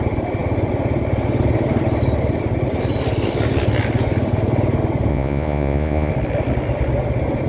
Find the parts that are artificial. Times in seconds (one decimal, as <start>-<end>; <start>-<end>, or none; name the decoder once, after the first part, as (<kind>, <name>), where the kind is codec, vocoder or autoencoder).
5.1-6.1 (vocoder, Vocos)